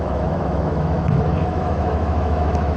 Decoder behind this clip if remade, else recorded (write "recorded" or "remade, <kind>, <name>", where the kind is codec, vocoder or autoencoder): remade, autoencoder, DAC-VAE